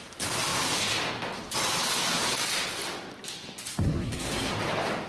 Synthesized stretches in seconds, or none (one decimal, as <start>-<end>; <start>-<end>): 3.7-4.5